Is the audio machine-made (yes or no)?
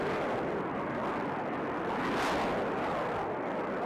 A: no